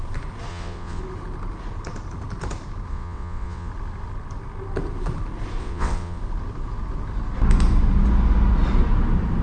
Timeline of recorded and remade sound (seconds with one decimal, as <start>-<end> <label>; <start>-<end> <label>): 0.0-0.5 recorded; 0.5-1.0 remade; 1.0-2.9 recorded; 2.9-3.7 remade; 3.7-5.6 recorded; 5.6-6.2 remade; 6.2-9.4 recorded